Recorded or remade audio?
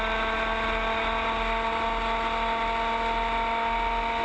recorded